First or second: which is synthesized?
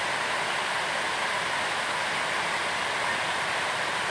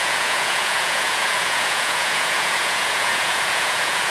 second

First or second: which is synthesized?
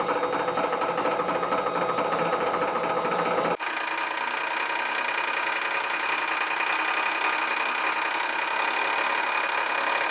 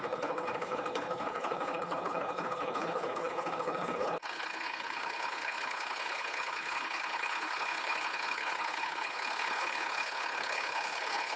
second